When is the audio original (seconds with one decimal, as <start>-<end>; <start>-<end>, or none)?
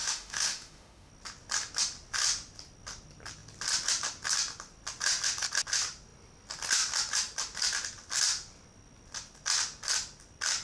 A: 1.1-10.6